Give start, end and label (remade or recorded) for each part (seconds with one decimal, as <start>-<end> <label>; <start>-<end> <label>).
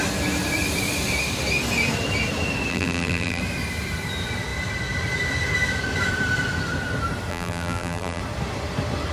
0.0-2.7 recorded; 2.7-3.4 remade; 3.4-7.3 recorded; 7.3-8.2 remade; 8.2-9.1 recorded